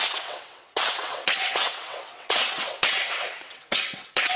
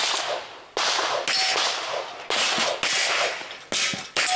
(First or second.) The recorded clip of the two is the second